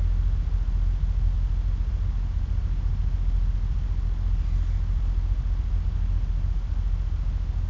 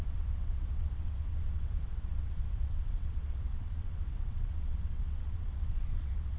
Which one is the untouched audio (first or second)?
first